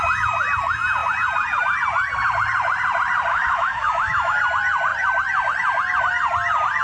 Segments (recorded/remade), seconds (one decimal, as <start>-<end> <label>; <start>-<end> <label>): 0.0-3.3 recorded; 3.3-4.4 remade; 4.4-6.8 recorded